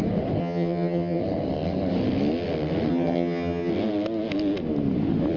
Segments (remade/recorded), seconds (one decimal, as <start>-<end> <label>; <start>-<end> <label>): 0.0-0.4 recorded; 0.4-1.2 remade; 1.2-2.9 recorded; 2.9-3.7 remade; 3.7-5.4 recorded